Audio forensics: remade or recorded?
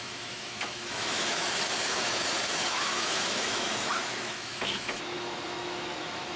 remade